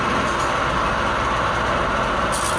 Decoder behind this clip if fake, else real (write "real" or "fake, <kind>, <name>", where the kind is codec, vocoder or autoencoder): real